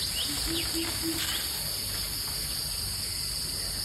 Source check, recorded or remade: recorded